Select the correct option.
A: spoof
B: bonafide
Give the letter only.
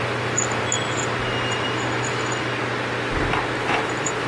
B